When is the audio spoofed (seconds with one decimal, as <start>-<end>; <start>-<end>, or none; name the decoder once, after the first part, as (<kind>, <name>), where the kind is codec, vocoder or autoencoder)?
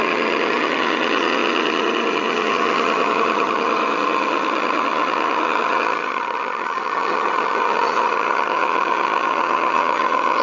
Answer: 0.0-10.4 (vocoder, HiFi-GAN)